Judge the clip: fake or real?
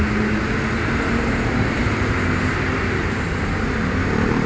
real